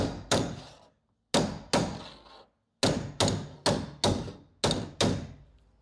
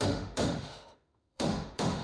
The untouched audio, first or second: first